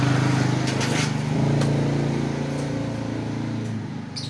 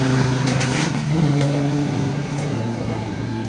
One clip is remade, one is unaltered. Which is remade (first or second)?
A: second